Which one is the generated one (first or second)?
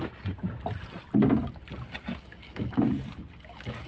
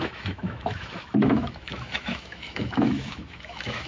second